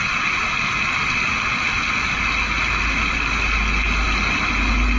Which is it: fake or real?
real